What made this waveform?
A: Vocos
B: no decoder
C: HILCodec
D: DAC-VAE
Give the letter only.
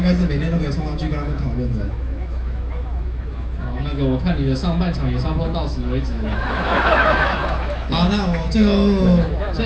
D